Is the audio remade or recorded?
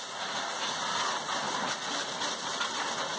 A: recorded